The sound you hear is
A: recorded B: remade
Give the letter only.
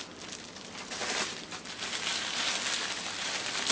A